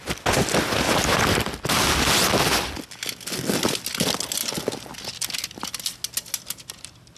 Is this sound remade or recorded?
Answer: recorded